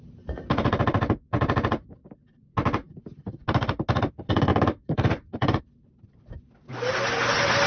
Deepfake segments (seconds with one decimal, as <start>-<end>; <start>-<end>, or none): 4.5-5.6